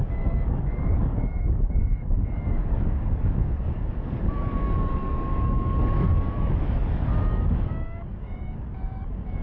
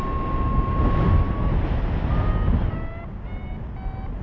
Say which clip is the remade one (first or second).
first